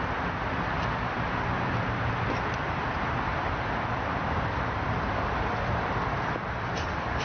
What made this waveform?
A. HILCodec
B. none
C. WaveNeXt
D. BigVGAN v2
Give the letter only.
D